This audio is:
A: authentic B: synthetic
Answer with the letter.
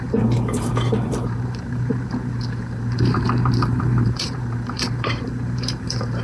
B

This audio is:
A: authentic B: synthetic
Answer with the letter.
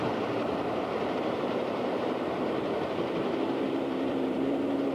B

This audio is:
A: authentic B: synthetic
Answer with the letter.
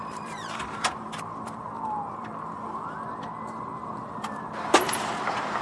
B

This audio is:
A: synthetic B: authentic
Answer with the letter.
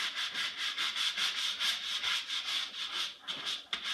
B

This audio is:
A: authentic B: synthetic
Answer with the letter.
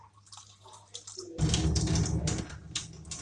B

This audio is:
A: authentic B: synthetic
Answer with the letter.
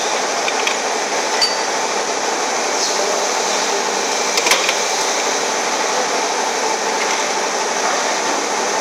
A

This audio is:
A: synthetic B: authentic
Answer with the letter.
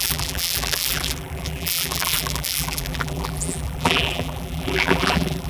A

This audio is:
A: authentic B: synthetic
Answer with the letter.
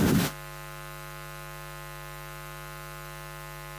A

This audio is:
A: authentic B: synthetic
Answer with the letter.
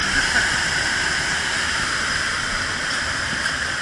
A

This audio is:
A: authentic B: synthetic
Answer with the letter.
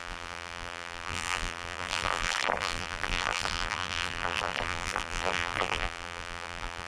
B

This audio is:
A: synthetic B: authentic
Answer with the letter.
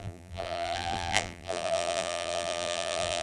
A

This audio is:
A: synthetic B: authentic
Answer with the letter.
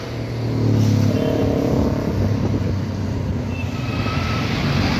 B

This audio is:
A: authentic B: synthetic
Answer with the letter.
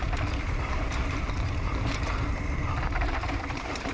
B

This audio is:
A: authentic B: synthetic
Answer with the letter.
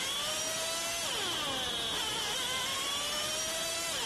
A